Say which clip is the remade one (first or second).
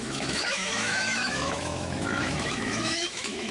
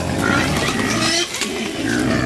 first